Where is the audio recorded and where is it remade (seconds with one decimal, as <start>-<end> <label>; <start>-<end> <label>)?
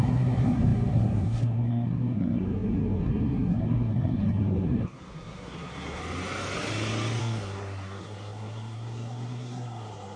0.0-6.0 remade; 6.0-7.2 recorded; 7.2-10.2 remade